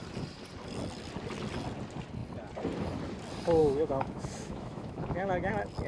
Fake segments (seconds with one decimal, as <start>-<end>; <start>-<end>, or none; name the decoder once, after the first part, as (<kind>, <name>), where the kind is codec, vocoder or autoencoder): 3.6-5.5 (autoencoder, DAC-VAE)